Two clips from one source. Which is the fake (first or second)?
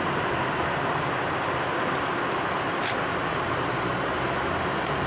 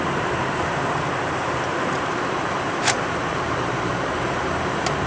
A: second